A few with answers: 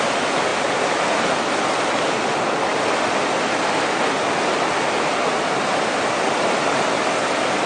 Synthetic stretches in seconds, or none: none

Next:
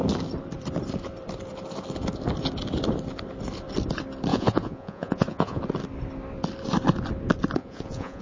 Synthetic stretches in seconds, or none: 4.3-5.6 (vocoder, Vocos); 7.6-8.2

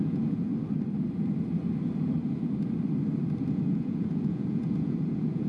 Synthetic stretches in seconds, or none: 0.0-0.5 (vocoder, Vocos); 3.5-5.5